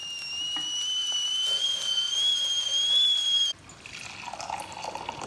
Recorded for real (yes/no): yes